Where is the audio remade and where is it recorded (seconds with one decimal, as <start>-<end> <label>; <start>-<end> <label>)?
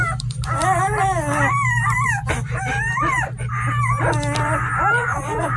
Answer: 0.0-5.0 recorded; 5.0-5.6 remade